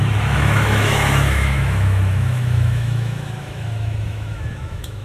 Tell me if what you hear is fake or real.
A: fake